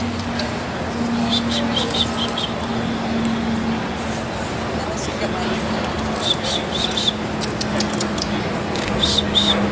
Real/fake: real